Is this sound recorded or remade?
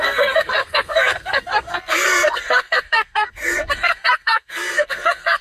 remade